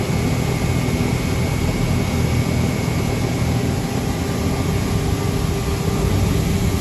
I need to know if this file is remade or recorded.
recorded